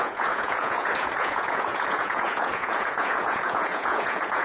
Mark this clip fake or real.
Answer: fake